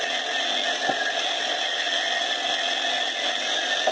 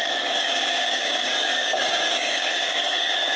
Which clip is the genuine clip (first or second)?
first